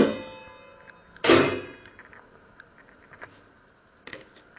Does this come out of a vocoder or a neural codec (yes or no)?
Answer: no